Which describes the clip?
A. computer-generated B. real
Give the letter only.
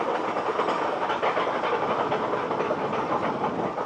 B